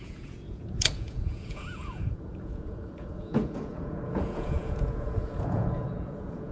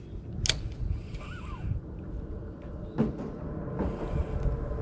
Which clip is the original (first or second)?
second